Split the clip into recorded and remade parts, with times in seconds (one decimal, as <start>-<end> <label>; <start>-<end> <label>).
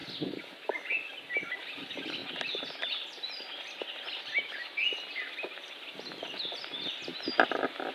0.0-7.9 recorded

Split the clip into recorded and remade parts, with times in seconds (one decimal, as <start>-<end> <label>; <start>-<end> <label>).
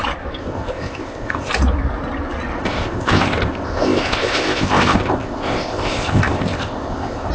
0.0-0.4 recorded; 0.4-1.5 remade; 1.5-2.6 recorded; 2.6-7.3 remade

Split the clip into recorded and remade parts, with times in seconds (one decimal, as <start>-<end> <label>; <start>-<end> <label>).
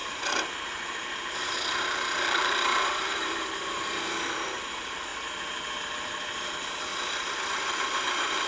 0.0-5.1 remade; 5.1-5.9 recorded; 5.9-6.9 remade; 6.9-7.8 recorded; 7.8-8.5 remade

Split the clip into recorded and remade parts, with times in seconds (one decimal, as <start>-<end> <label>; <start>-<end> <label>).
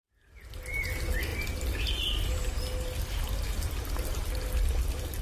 0.0-5.2 recorded